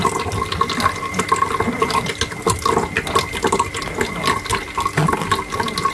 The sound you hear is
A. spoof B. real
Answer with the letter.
B